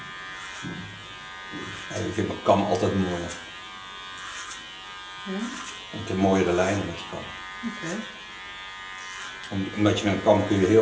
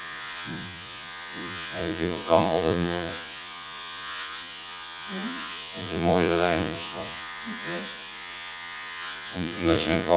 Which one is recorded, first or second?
first